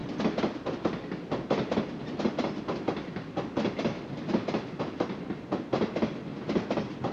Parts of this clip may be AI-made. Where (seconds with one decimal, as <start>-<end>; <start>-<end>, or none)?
none